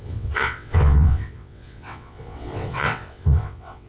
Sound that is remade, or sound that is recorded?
remade